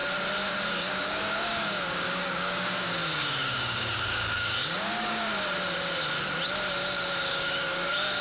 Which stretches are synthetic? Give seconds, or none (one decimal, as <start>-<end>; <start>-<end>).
0.5-5.3; 7.3-8.2